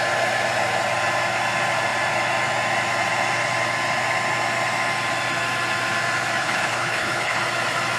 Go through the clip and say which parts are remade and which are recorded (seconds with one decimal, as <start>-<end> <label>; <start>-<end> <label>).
0.0-6.4 recorded; 6.4-7.4 remade; 7.4-8.0 recorded

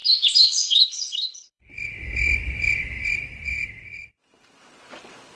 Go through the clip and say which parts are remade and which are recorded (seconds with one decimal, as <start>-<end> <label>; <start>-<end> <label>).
0.0-1.7 remade; 1.7-5.4 recorded

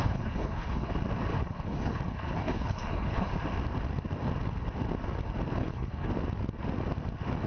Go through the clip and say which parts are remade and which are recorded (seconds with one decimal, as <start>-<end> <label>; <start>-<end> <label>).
0.0-0.9 remade; 0.9-1.3 recorded; 1.3-3.3 remade; 3.3-5.6 recorded; 5.6-6.1 remade; 6.1-7.5 recorded

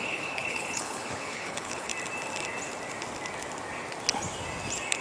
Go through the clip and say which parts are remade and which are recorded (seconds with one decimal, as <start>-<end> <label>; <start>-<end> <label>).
0.0-1.9 remade; 1.9-5.0 recorded

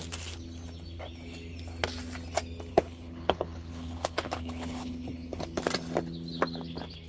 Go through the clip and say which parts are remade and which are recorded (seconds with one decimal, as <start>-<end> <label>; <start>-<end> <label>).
0.0-2.7 recorded; 2.7-5.6 remade; 5.6-7.1 recorded